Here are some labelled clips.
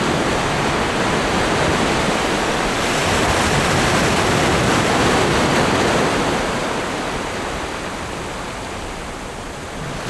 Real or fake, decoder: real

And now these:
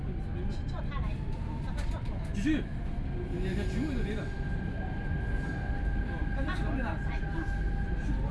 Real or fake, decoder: real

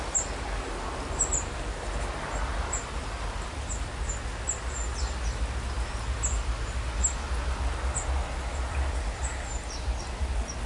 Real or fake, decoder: real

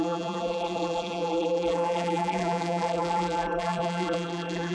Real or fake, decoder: fake, vocoder, BigVGAN v2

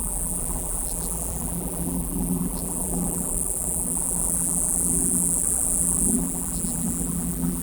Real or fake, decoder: fake, vocoder, BigVGAN v2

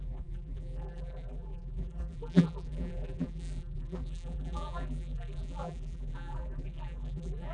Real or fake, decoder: fake, vocoder, BigVGAN v2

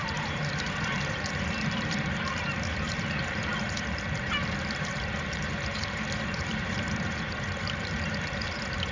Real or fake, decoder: fake, vocoder, BigVGAN v2